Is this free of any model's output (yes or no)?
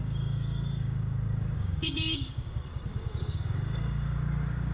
no